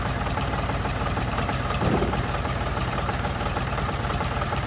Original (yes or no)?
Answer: no